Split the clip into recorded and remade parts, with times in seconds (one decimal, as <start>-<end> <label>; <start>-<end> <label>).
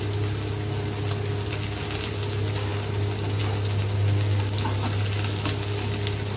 0.0-6.4 recorded